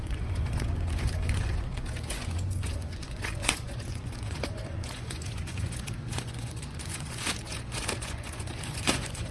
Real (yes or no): no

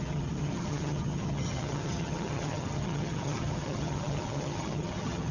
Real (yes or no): no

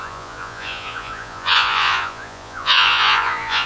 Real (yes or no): no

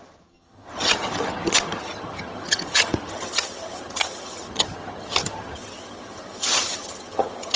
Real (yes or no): no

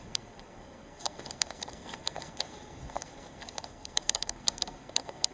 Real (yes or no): no